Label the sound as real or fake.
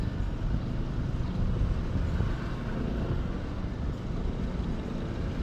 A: real